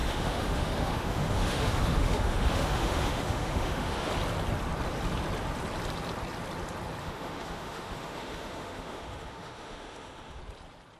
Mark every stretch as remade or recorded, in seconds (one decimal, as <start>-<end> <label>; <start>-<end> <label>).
0.0-4.1 remade; 4.1-7.0 recorded; 7.0-10.4 remade; 10.4-11.0 recorded